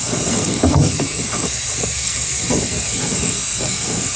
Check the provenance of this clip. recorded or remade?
remade